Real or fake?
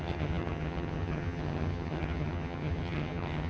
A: fake